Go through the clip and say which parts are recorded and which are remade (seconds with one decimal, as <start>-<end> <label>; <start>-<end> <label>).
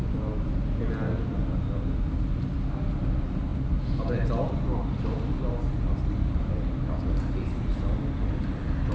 0.0-8.9 recorded